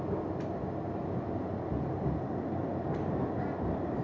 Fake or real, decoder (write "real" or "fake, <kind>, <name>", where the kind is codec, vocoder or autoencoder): real